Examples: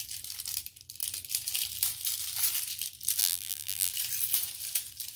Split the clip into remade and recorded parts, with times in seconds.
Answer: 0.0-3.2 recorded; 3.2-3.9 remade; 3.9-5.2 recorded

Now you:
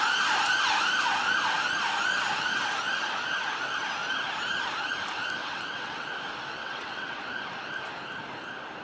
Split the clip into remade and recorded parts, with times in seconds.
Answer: 0.0-5.4 recorded; 5.4-6.1 remade; 6.1-6.6 recorded; 6.6-7.2 remade; 7.2-8.8 recorded

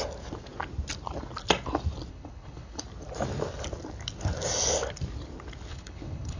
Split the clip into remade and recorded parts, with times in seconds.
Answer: 0.0-2.1 recorded; 2.1-2.8 remade; 2.8-5.7 recorded; 5.7-6.4 remade

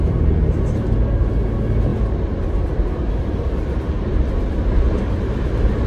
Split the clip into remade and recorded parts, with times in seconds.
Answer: 0.0-1.9 recorded; 1.9-2.7 remade; 2.7-5.9 recorded

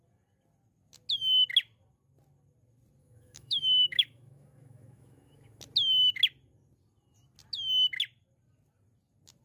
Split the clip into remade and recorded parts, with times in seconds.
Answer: 0.0-3.0 recorded; 3.0-5.6 remade; 5.6-9.4 recorded

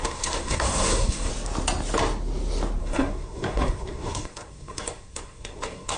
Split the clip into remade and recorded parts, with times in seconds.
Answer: 0.0-1.3 remade; 1.3-2.8 recorded; 2.8-6.0 remade

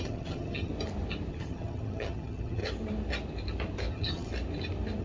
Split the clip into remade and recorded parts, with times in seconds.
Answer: 0.0-0.7 remade; 0.7-1.3 recorded; 1.3-2.6 remade; 2.6-3.9 recorded; 3.9-4.3 remade; 4.3-5.0 recorded